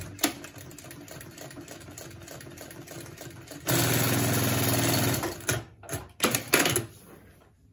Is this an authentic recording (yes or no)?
yes